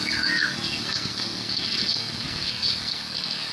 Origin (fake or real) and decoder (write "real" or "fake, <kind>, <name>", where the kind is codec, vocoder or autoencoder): fake, codec, SNAC